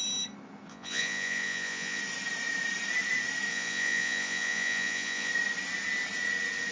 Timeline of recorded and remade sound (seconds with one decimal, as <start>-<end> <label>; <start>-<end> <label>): 0.0-0.7 recorded; 0.7-2.0 remade; 2.0-3.5 recorded; 3.5-5.3 remade; 5.3-6.7 recorded